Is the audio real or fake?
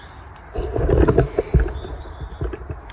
real